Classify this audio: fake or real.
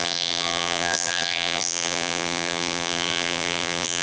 fake